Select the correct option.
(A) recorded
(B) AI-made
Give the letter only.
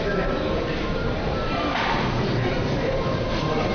B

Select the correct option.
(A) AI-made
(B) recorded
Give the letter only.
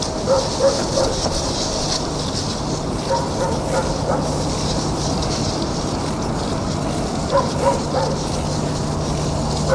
B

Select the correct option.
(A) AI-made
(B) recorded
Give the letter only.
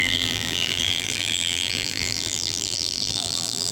A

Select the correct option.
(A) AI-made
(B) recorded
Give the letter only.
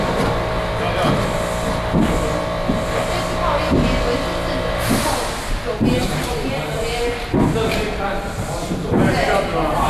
B